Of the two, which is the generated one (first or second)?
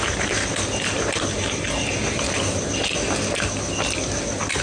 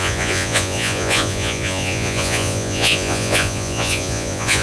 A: second